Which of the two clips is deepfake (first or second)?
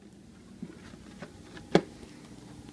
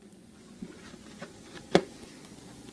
second